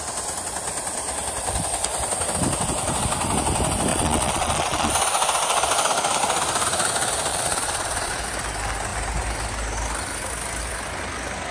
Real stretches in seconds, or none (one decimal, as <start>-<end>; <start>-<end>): 0.0-3.9; 4.9-7.3; 8.2-11.5